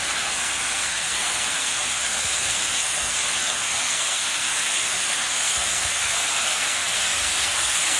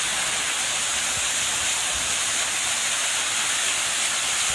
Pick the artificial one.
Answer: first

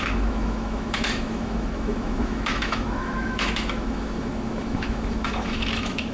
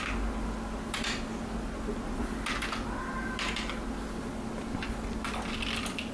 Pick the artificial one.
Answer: first